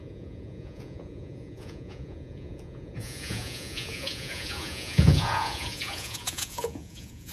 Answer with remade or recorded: remade